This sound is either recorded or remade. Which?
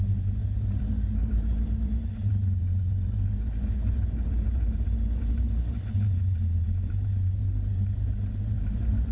remade